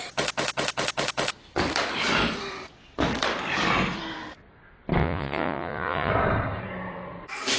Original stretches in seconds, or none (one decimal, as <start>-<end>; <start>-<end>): 0.0-5.0; 6.1-7.6